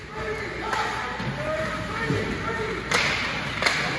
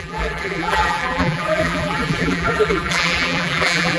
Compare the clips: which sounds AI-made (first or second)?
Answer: second